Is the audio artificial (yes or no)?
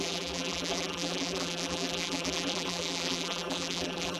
yes